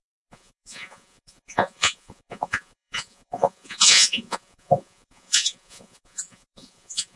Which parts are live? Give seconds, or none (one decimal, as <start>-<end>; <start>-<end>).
none